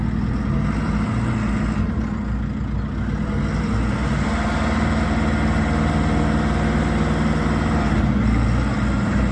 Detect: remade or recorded recorded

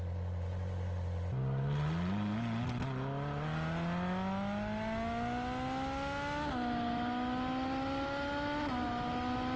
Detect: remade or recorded recorded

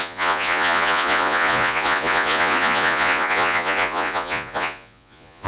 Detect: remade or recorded remade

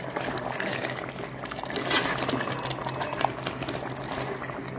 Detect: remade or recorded recorded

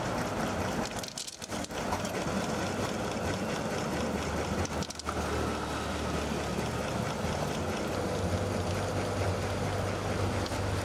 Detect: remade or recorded recorded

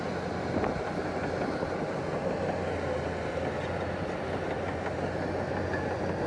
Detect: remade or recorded recorded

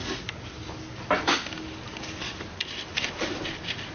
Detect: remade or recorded recorded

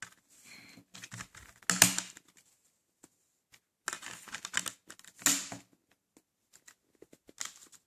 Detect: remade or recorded recorded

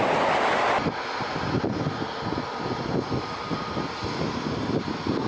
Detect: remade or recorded recorded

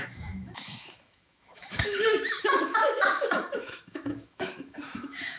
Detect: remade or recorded remade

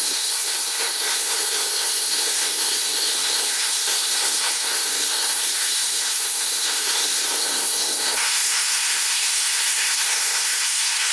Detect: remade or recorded remade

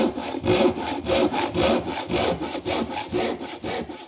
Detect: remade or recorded recorded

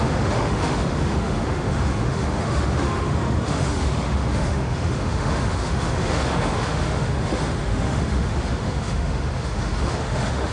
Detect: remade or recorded remade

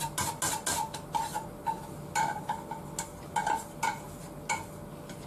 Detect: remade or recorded recorded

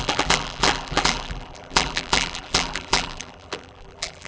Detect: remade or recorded remade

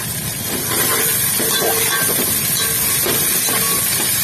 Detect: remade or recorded recorded